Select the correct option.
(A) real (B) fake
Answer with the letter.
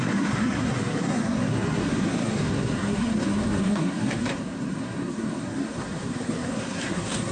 B